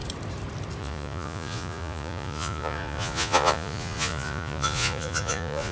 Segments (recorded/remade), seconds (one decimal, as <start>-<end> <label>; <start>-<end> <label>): 0.0-0.8 recorded; 0.8-5.7 remade